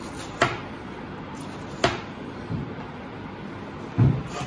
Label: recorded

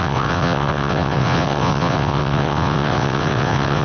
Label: remade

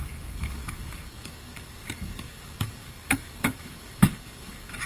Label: remade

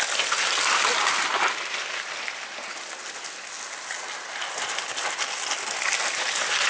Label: recorded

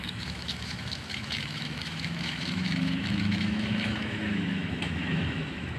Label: remade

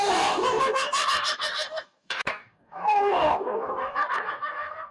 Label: remade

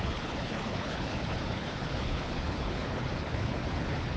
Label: remade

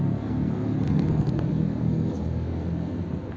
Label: remade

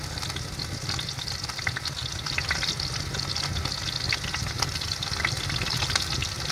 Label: recorded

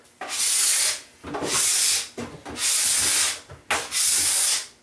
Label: recorded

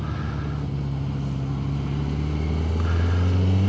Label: recorded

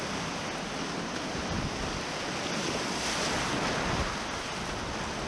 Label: recorded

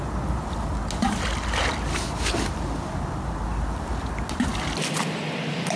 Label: recorded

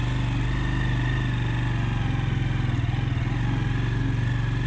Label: recorded